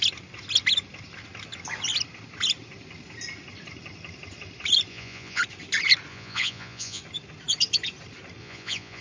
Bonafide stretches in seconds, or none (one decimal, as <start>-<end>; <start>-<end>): 0.0-4.9; 5.4-6.1; 7.0-8.4